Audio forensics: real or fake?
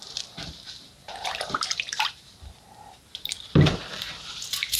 fake